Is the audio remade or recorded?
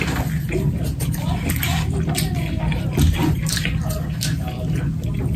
recorded